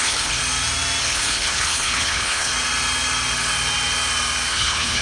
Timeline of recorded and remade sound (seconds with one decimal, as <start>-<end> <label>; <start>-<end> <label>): 0.0-0.4 remade; 0.4-1.0 recorded; 1.0-2.5 remade; 2.5-4.5 recorded; 4.5-5.0 remade